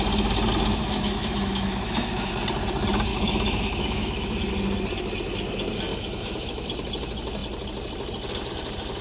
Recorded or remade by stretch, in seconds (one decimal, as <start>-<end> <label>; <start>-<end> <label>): 0.0-0.8 recorded; 0.8-2.3 remade; 2.3-3.1 recorded; 3.1-4.5 remade; 4.5-5.9 recorded; 5.9-6.7 remade; 6.7-9.0 recorded